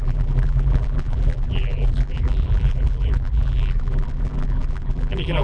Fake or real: fake